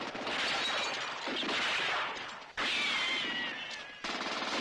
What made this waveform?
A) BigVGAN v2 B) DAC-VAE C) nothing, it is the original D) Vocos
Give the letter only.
C